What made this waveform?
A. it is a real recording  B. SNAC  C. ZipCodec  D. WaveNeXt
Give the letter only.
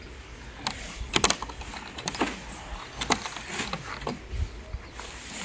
A